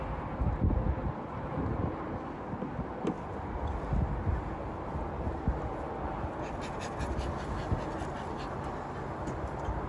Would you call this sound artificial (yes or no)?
no